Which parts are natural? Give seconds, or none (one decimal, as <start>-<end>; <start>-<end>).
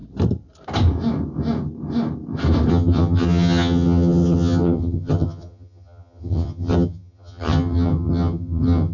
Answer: 0.0-2.7